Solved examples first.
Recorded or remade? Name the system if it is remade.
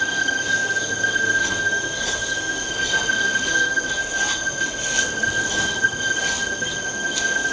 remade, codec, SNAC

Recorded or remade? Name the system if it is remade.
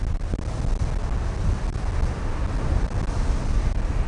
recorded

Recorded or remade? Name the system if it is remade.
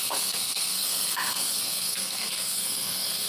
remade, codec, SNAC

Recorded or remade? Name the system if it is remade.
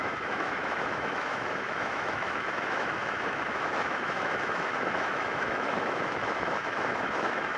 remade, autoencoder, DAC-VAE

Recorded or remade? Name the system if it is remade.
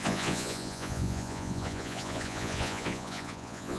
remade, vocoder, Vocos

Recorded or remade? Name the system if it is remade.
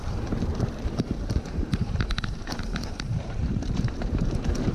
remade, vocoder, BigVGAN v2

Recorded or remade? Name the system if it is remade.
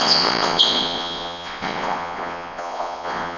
remade, vocoder, Vocos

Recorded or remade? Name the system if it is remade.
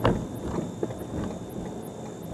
recorded